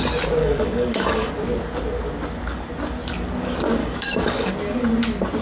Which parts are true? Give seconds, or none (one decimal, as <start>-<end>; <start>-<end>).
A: 0.0-0.4; 1.3-3.8; 4.5-5.4